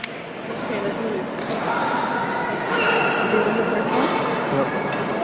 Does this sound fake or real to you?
real